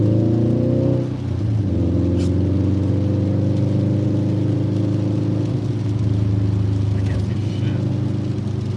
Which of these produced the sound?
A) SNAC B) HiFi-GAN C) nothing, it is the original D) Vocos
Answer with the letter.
C